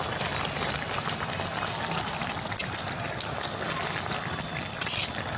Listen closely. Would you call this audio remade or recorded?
recorded